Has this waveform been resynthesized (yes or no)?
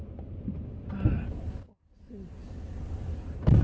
no